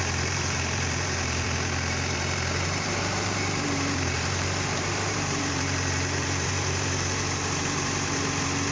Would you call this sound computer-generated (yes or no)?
yes